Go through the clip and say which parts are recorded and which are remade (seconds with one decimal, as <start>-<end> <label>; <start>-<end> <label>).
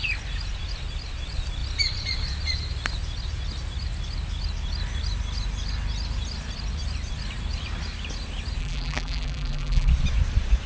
0.0-8.6 recorded; 8.6-9.9 remade; 9.9-10.7 recorded